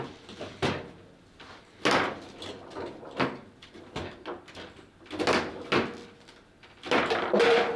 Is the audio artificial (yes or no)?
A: no